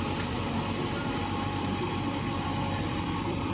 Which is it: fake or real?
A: fake